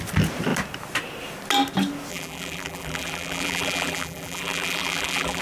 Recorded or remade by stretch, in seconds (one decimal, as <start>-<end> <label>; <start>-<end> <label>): 0.0-2.1 recorded; 2.1-5.4 remade